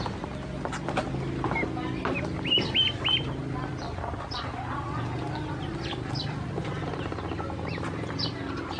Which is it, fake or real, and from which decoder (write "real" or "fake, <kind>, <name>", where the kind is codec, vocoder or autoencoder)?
real